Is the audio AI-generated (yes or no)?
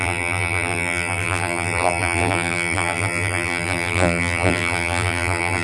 yes